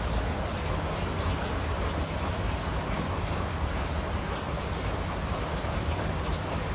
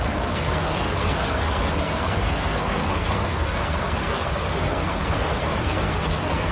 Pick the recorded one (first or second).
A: first